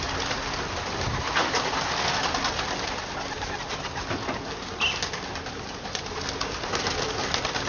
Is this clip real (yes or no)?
yes